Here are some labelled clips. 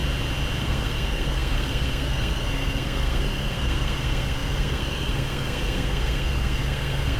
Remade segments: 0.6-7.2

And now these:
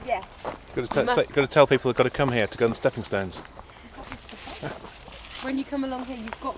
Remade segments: 2.7-4.6

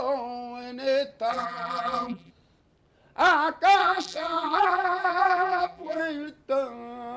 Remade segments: 1.3-2.3; 3.8-6.0